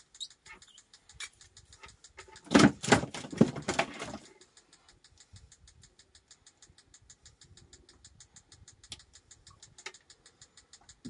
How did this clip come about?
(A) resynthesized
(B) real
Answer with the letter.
B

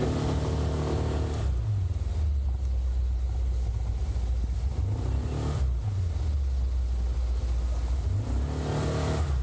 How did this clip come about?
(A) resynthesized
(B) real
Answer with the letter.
B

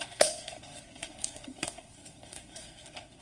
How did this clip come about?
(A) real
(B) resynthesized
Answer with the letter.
B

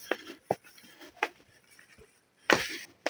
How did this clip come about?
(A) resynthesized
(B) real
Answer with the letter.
A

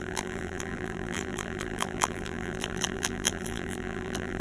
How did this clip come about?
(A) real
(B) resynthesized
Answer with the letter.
B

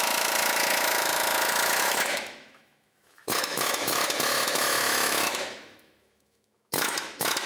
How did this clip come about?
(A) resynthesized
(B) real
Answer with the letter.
A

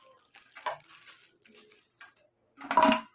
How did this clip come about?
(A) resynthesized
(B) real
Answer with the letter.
B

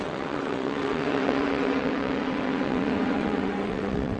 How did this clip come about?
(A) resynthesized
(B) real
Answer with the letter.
A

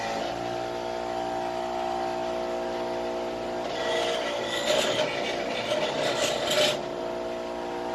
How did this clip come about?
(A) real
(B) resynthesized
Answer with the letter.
A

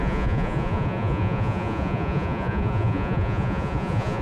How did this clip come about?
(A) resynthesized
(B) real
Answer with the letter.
A